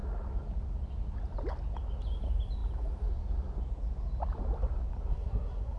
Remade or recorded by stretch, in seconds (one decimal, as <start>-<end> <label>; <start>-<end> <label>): 0.0-5.1 recorded; 5.1-5.8 remade